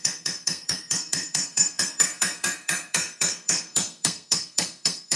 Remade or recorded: remade